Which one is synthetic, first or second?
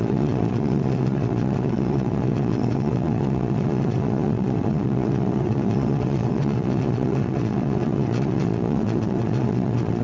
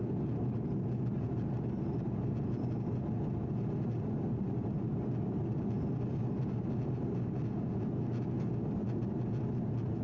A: first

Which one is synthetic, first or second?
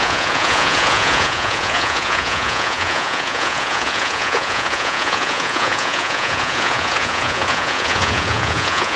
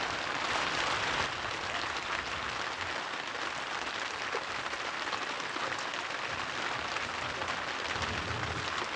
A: first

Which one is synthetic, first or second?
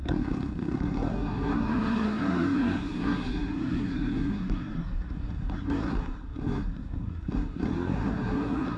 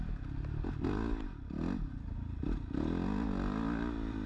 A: first